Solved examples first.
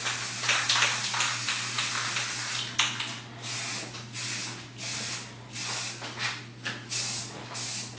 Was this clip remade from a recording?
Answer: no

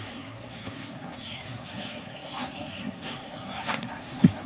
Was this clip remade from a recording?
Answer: yes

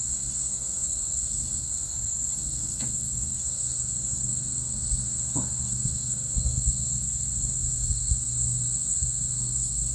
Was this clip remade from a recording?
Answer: yes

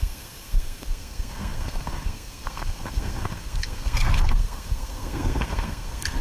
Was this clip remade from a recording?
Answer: yes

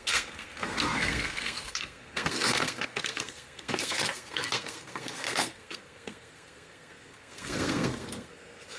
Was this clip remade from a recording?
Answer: yes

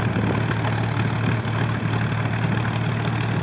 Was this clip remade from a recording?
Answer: no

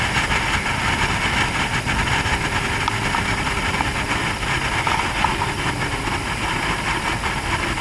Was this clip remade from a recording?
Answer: no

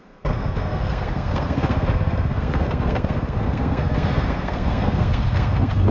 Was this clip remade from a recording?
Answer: yes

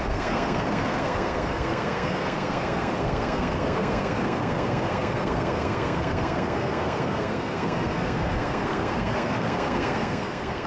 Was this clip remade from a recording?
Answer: yes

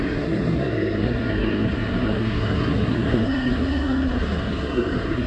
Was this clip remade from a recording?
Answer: yes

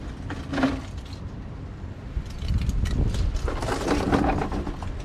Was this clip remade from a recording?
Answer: no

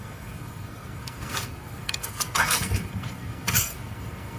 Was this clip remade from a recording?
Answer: yes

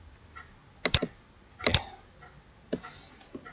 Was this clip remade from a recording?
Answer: no